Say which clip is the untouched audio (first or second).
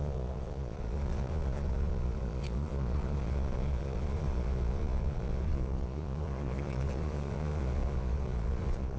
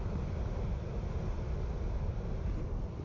second